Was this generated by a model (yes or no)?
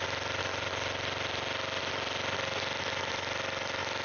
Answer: no